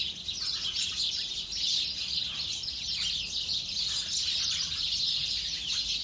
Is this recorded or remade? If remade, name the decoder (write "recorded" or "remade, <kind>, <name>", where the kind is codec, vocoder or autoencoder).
recorded